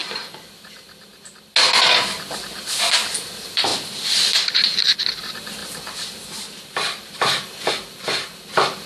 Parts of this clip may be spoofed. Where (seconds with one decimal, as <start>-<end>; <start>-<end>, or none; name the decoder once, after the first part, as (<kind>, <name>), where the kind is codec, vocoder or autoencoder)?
0.0-1.3 (vocoder, BigVGAN v2); 3.7-4.3; 5.6-7.7